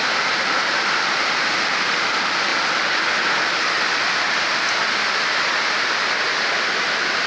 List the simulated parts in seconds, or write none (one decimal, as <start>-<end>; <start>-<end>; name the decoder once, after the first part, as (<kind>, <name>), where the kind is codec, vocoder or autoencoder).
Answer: 0.0-2.5 (vocoder, BigVGAN v2); 6.8-7.3